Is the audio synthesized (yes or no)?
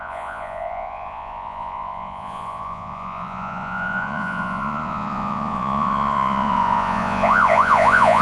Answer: yes